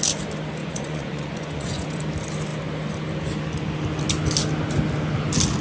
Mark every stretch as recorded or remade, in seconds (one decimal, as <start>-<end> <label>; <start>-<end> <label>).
0.0-0.6 recorded; 0.6-2.0 remade; 2.0-5.6 recorded